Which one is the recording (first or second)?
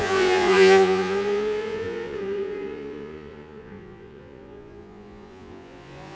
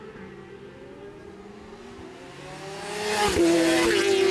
second